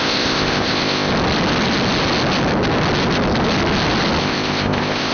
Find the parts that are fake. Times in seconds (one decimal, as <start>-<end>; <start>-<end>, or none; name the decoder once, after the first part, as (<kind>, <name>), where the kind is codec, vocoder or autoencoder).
0.0-1.1 (codec, ZipCodec); 4.2-5.1